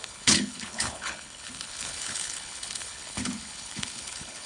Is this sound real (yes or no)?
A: no